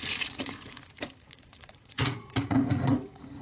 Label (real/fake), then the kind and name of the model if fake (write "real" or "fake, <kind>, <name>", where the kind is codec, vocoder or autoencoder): fake, vocoder, Vocos